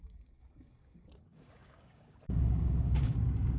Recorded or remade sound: remade